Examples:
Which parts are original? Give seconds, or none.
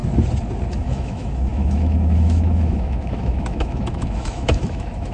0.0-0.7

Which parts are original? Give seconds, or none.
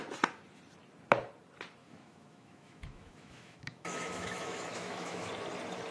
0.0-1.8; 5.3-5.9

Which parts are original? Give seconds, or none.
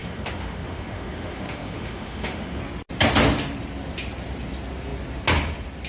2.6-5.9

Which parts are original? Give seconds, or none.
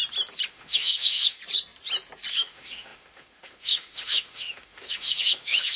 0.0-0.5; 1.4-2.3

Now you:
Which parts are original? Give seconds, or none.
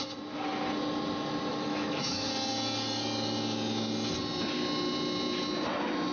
0.0-1.5; 2.3-6.1